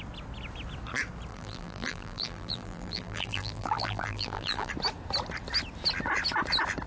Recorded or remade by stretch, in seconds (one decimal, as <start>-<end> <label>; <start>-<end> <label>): 0.0-1.3 recorded; 1.3-4.7 remade; 4.7-6.9 recorded